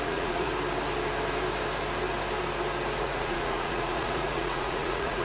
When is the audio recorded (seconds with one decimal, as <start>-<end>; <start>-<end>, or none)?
0.5-3.0